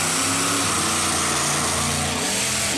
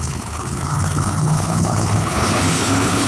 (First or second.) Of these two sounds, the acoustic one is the first